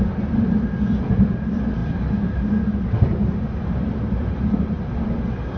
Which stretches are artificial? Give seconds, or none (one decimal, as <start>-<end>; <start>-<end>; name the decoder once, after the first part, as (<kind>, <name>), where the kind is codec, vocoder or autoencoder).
none